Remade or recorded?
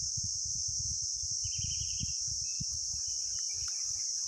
recorded